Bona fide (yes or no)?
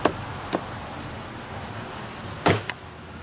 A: yes